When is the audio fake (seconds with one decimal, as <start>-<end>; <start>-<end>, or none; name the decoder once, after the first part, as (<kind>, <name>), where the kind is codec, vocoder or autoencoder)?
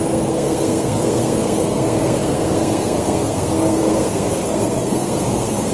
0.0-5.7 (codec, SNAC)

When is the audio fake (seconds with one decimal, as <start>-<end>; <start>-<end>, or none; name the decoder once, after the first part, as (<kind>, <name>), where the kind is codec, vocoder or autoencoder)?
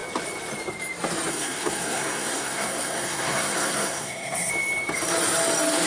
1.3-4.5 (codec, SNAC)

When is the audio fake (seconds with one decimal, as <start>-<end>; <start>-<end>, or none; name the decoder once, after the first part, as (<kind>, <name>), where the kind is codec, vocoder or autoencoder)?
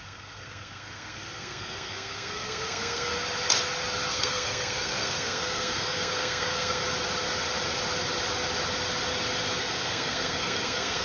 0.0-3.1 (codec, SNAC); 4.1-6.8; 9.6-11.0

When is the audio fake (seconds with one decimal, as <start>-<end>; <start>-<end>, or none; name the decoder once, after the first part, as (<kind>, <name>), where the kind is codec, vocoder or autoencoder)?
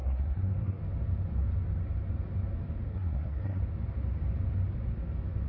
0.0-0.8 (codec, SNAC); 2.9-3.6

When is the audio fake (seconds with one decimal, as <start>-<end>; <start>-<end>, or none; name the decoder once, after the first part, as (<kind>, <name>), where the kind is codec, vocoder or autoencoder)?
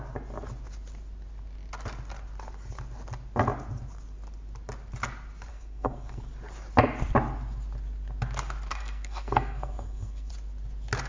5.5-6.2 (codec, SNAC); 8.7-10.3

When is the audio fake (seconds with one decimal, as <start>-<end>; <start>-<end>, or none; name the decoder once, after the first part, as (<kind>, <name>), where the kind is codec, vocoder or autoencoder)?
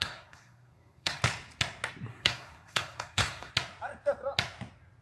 0.0-1.2 (codec, SNAC); 2.1-3.5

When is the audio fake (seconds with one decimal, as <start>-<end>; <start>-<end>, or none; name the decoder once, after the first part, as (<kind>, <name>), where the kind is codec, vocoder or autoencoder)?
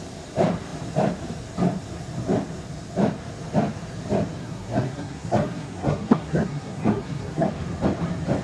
4.4-7.5 (codec, SNAC)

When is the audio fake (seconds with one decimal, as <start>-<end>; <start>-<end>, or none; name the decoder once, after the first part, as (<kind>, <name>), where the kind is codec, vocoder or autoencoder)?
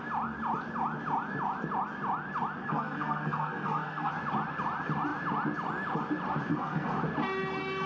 2.6-4.1 (codec, SNAC); 6.5-7.0